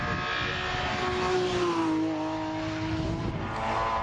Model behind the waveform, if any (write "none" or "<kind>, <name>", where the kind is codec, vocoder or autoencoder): none